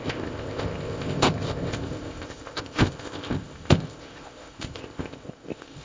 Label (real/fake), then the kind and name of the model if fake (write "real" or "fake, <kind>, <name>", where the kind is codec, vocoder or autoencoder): fake, codec, ZipCodec